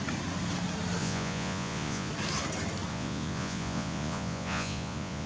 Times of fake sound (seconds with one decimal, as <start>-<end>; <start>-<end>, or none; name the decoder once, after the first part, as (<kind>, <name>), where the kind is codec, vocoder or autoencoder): 1.0-2.1 (vocoder, Vocos); 2.9-5.3